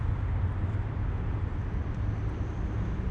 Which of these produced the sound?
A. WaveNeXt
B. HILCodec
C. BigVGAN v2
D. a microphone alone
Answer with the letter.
D